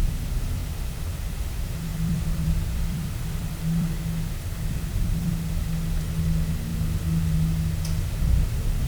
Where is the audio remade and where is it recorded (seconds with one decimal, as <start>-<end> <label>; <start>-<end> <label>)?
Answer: 0.0-0.6 recorded; 0.6-1.4 remade; 1.4-1.9 recorded; 1.9-5.3 remade; 5.3-8.9 recorded